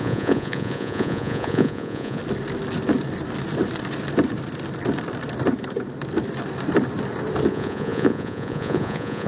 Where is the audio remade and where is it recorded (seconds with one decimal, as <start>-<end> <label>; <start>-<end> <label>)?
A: 0.0-2.2 remade; 2.2-7.5 recorded; 7.5-9.3 remade